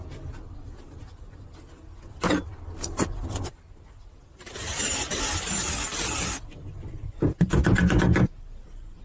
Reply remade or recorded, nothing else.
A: recorded